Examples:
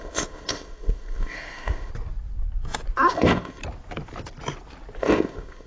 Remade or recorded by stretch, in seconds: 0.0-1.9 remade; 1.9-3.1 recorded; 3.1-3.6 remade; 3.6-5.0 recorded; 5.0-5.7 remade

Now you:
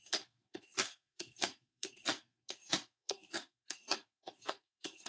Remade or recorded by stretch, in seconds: 0.0-5.1 remade

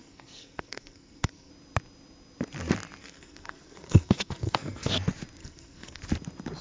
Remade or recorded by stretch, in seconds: 0.0-1.5 remade; 1.5-3.0 recorded; 3.0-4.9 remade; 4.9-5.4 recorded; 5.4-6.0 remade; 6.0-6.6 recorded

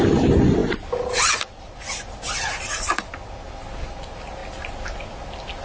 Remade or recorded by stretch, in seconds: 0.0-5.6 recorded

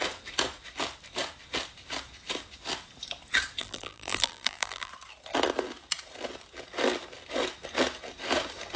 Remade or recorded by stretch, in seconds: 0.0-3.6 recorded; 3.6-4.9 remade; 4.9-8.8 recorded

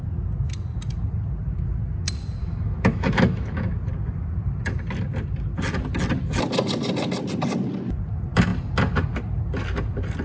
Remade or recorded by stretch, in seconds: 0.0-2.4 recorded; 2.4-3.7 remade; 3.7-10.2 recorded

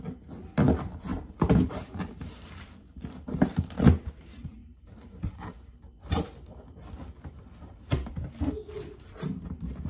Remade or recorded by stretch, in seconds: 0.0-1.1 recorded; 1.1-5.8 remade; 5.8-9.9 recorded

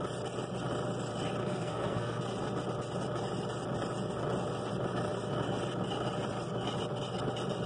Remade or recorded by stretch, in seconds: 0.0-1.4 recorded; 1.4-2.2 remade; 2.2-7.7 recorded